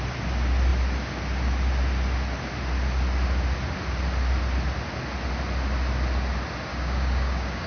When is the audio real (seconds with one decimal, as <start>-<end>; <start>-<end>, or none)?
0.0-6.7